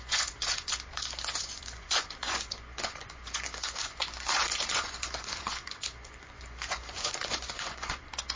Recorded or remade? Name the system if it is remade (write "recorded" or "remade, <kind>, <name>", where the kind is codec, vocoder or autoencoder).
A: remade, vocoder, Vocos